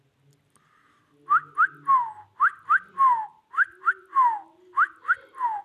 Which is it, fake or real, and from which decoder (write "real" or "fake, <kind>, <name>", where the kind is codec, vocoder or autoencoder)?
real